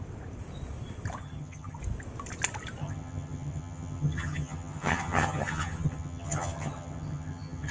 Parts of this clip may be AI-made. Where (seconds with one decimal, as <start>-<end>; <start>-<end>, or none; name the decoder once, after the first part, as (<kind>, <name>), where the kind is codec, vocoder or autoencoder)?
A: 1.2-1.8 (vocoder, HiFi-GAN); 2.8-7.7